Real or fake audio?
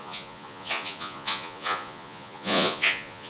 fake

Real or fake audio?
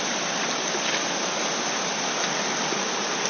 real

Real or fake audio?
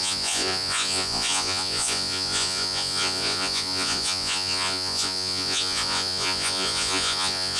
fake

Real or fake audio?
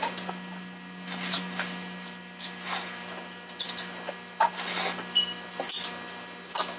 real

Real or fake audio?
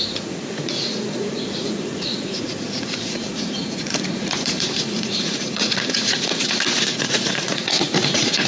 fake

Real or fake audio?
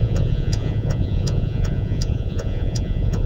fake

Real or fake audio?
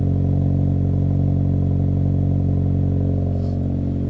real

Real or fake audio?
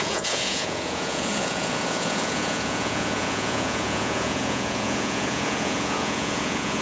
fake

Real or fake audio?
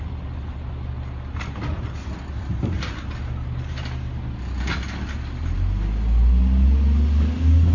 real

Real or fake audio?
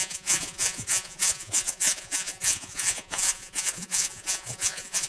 fake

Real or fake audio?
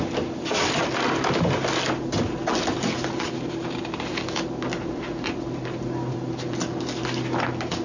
real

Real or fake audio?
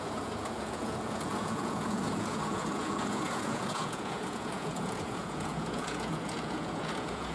fake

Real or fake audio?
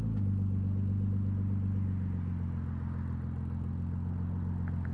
real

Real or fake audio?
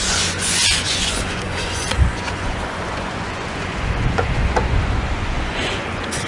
fake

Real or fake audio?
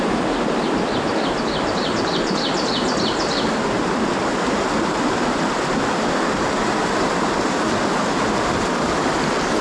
real